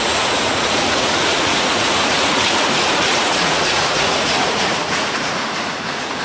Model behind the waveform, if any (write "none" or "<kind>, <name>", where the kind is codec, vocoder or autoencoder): vocoder, Vocos